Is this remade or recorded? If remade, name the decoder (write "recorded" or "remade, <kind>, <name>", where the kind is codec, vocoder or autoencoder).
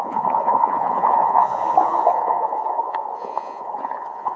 remade, vocoder, Vocos